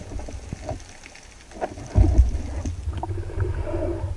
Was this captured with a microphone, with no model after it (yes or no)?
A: yes